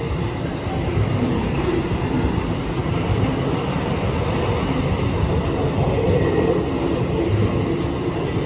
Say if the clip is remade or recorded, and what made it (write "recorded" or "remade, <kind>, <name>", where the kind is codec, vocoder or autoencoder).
recorded